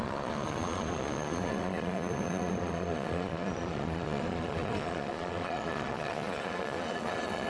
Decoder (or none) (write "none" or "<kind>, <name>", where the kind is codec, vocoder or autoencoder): vocoder, Vocos